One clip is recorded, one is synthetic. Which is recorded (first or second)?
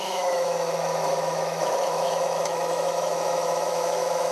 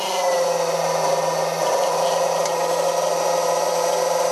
second